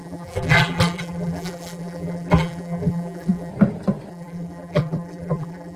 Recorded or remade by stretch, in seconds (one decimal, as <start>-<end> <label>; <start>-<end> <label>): 0.0-3.5 remade; 3.5-4.1 recorded; 4.1-5.8 remade

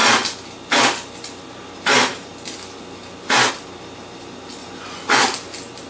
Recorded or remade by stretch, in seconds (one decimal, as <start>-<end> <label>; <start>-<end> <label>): 0.0-4.6 recorded; 4.6-5.2 remade; 5.2-5.9 recorded

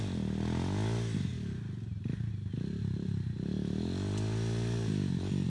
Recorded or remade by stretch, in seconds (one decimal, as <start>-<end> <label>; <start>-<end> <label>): 0.0-5.5 recorded

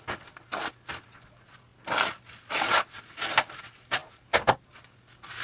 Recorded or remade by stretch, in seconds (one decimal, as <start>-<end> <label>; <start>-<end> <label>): 0.0-5.4 recorded

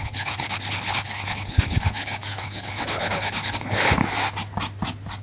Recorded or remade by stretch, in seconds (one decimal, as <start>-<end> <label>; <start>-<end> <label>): 0.0-4.0 remade; 4.0-5.2 recorded

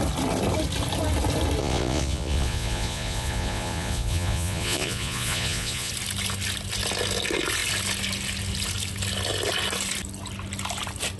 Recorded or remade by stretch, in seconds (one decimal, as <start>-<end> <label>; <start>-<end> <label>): 0.0-1.6 recorded; 1.6-5.9 remade; 5.9-11.2 recorded

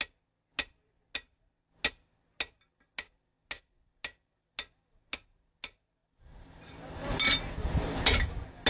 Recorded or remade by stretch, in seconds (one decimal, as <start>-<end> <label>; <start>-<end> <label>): 0.0-8.7 recorded